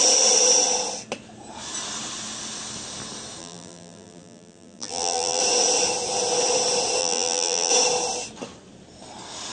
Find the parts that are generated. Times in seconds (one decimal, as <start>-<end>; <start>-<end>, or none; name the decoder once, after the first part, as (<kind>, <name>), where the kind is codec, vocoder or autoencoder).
3.4-5.4 (vocoder, BigVGAN v2); 7.0-7.7